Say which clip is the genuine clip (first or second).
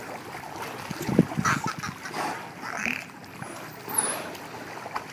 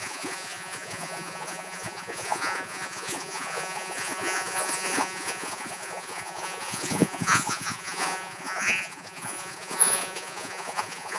first